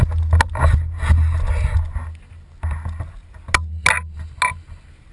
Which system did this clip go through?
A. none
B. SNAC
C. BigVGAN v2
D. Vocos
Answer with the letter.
A